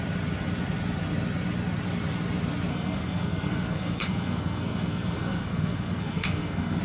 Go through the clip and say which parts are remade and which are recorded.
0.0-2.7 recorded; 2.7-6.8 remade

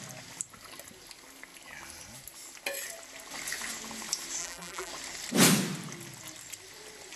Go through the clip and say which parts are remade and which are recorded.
0.0-4.4 recorded; 4.4-4.9 remade; 4.9-7.2 recorded

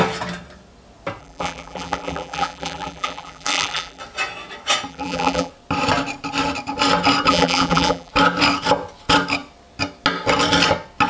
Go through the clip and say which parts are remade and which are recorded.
0.0-1.2 recorded; 1.2-4.0 remade; 4.0-4.9 recorded; 4.9-5.5 remade; 5.5-7.3 recorded; 7.3-8.1 remade; 8.1-11.1 recorded